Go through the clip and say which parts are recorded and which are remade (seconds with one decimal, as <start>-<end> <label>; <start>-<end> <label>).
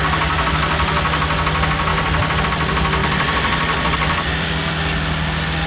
0.0-1.9 recorded; 1.9-2.4 remade; 2.4-3.0 recorded; 3.0-4.5 remade; 4.5-5.7 recorded